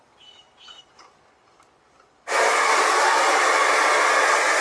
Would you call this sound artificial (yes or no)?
no